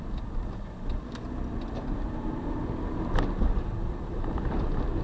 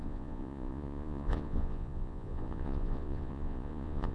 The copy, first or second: second